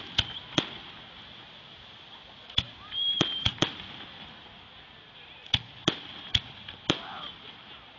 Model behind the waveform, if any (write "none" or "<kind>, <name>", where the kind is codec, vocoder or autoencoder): none